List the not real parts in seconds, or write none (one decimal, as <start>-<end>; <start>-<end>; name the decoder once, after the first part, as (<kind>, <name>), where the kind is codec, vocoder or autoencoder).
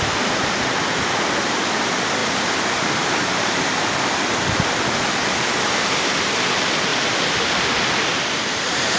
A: 2.2-3.6 (vocoder, BigVGAN v2)